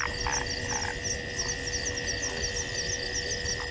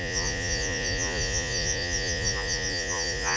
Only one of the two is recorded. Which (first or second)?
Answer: first